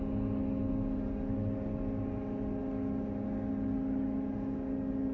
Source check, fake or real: real